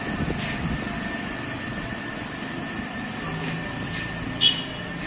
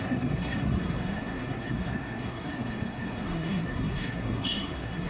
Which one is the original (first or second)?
first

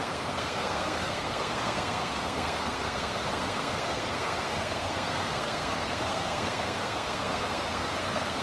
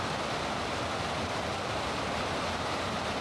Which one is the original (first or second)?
second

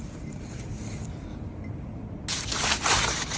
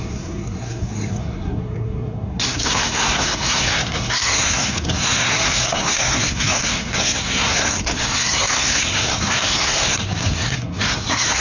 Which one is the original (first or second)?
first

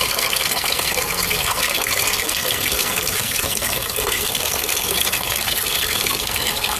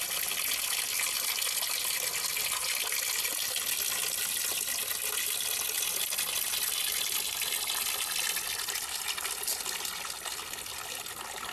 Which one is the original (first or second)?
second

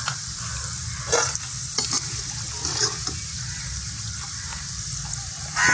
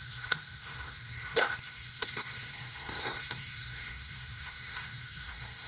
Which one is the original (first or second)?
first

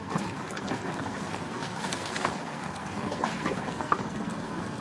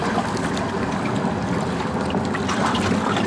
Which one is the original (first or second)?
second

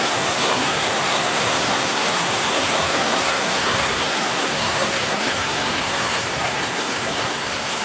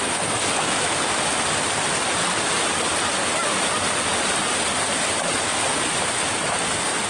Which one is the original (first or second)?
second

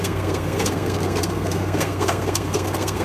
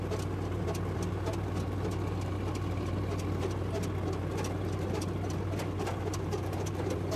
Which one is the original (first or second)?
second